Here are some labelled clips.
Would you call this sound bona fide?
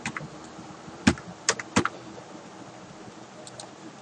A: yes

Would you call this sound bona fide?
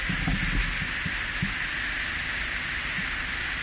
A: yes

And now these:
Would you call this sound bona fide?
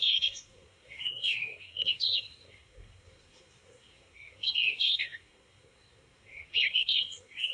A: no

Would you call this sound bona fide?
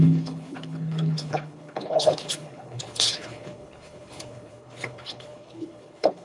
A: no